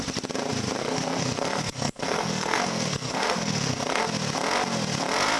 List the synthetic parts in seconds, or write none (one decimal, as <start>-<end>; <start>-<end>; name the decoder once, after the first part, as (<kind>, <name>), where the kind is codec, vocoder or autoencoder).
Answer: 0.8-4.0 (codec, SNAC)

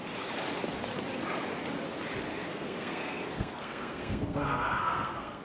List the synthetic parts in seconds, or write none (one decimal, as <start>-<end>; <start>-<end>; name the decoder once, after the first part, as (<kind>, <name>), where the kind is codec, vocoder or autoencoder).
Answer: 2.3-5.4 (codec, SNAC)

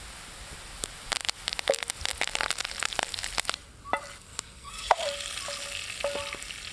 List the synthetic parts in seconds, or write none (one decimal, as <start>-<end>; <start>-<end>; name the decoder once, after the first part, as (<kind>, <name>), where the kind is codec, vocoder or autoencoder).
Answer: 4.2-5.0 (codec, SNAC)

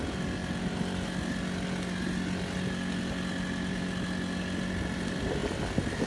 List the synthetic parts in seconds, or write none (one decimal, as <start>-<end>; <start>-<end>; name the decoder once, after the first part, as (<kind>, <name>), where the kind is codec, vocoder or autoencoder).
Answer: none

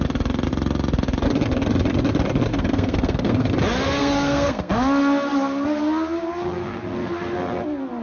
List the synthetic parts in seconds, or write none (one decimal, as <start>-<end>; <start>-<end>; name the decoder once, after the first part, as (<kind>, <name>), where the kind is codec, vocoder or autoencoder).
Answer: 2.5-3.5 (codec, SNAC); 4.0-4.7